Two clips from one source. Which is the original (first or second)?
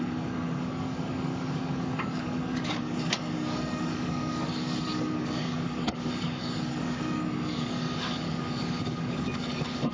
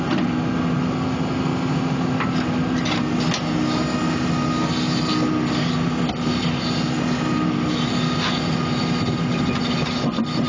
second